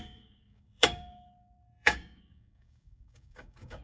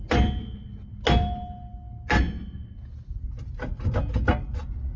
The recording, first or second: second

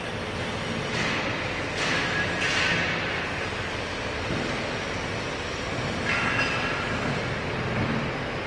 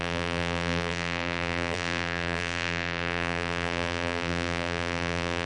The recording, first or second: first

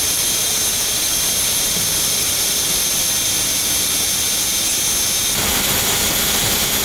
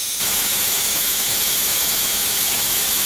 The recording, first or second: first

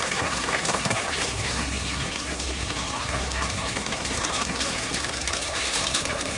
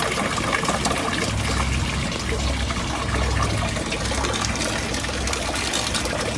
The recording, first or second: second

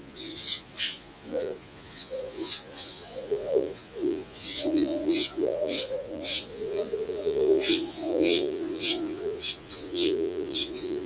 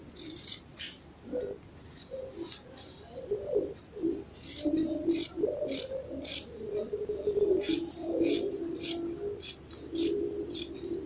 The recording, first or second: second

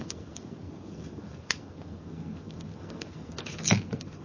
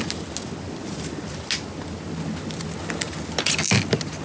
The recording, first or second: second